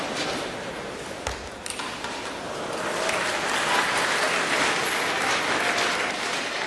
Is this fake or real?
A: real